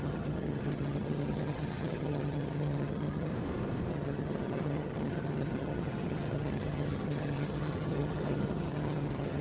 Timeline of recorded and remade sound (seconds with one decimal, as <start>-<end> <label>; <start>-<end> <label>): 0.0-3.3 remade; 3.3-3.9 recorded; 3.9-9.4 remade